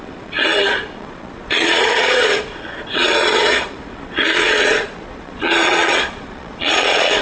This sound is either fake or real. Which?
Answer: fake